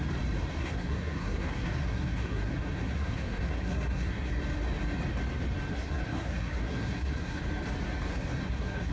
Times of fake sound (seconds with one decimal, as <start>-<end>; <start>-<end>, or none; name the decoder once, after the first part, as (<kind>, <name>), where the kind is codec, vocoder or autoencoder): 0.5-4.3 (codec, SNAC); 5.7-7.4; 8.1-8.9